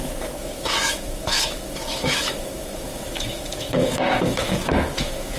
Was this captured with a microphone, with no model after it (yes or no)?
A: no